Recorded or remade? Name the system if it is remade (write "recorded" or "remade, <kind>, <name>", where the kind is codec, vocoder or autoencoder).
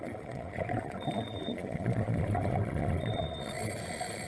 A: remade, vocoder, Vocos